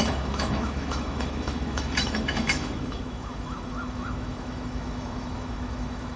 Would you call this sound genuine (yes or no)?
no